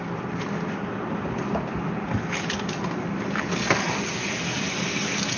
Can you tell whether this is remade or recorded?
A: recorded